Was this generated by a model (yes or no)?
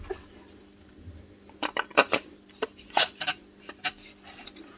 yes